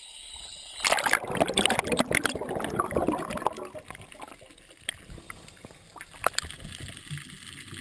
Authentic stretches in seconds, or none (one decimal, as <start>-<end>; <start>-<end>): 0.0-7.8